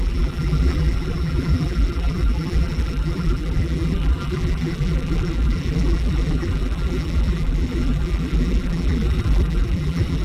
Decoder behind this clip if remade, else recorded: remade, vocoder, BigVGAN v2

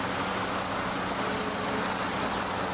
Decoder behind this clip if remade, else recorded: recorded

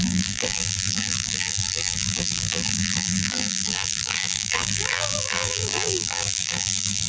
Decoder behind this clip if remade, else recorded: remade, vocoder, BigVGAN v2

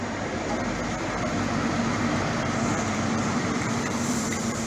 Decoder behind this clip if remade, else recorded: remade, vocoder, BigVGAN v2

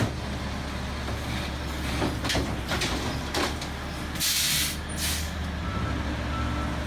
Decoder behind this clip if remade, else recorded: recorded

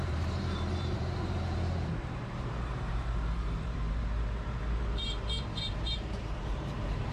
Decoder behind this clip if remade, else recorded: remade, vocoder, BigVGAN v2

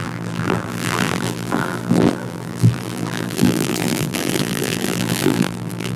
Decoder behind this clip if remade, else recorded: remade, vocoder, BigVGAN v2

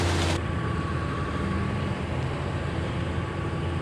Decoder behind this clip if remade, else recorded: remade, vocoder, BigVGAN v2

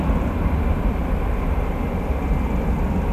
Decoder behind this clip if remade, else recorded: recorded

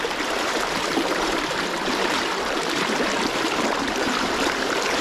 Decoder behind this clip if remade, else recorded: remade, vocoder, BigVGAN v2